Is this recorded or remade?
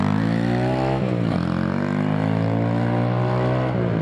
recorded